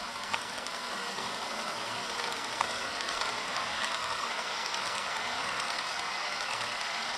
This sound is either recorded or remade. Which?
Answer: remade